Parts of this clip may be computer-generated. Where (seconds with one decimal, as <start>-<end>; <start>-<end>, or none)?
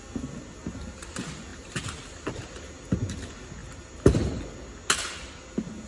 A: 1.5-2.4; 3.6-4.4